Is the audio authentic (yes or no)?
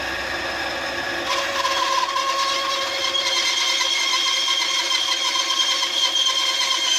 yes